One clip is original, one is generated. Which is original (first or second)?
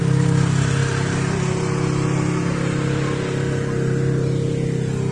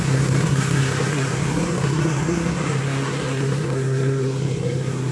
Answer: first